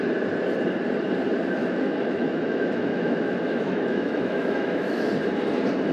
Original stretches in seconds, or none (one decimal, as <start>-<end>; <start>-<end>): 0.0-1.6; 5.1-5.9